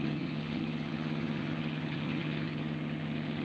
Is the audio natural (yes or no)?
no